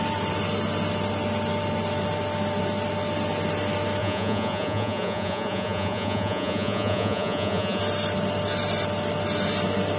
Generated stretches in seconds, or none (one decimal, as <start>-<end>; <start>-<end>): 4.0-7.8